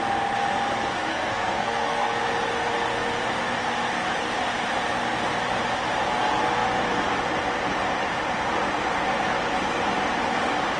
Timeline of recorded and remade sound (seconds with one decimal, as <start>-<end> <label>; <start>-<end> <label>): 0.0-1.1 recorded; 1.1-2.2 remade; 2.2-10.8 recorded